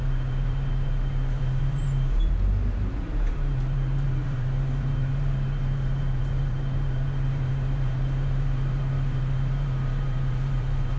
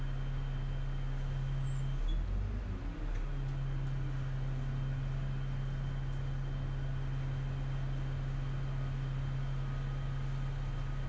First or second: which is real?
second